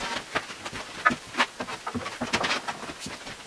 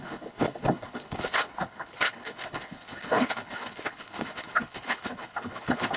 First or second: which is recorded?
first